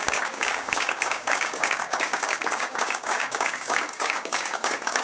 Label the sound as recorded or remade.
remade